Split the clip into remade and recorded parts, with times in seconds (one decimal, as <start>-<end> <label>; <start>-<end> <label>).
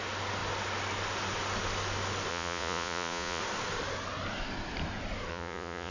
0.0-2.3 recorded; 2.3-3.4 remade; 3.4-5.3 recorded; 5.3-5.9 remade